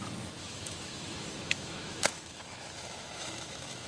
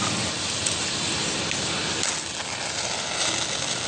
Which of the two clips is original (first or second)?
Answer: second